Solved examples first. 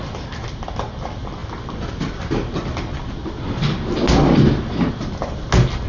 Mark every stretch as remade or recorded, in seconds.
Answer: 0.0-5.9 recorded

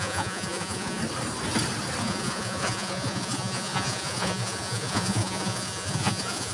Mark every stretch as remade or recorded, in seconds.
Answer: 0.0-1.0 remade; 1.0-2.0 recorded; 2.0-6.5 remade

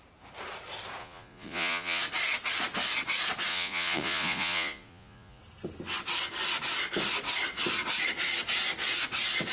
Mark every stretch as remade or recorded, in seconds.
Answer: 0.0-1.0 recorded; 1.0-2.0 remade; 2.0-3.5 recorded; 3.5-5.4 remade; 5.4-9.5 recorded